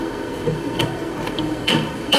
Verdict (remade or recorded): remade